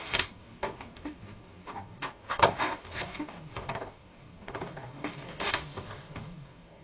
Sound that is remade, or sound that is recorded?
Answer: remade